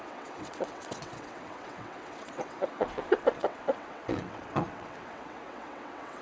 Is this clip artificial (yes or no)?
yes